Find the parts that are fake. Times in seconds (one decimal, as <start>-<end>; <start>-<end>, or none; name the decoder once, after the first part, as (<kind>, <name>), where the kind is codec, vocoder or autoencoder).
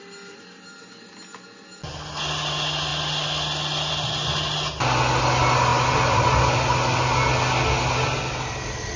none